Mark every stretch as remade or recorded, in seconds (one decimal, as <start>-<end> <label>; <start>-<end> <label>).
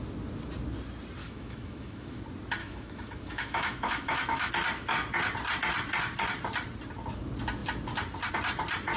0.0-1.2 recorded; 1.2-2.2 remade; 2.2-2.6 recorded; 2.6-4.5 remade; 4.5-9.0 recorded